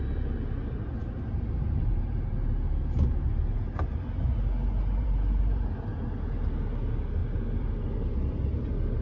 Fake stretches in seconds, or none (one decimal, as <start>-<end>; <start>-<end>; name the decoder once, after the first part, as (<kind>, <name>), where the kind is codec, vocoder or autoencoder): 1.0-2.3 (vocoder, BigVGAN v2); 5.0-5.7